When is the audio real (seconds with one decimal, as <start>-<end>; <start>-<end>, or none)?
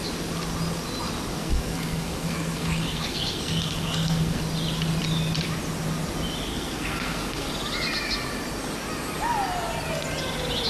0.0-1.3; 4.4-6.5; 7.5-10.7